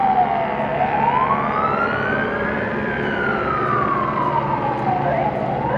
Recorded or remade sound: recorded